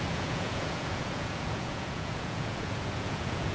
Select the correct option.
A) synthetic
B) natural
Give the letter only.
A